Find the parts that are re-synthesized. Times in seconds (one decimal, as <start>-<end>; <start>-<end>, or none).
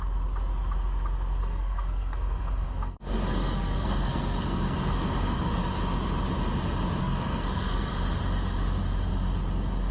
1.4-5.6; 7.0-7.9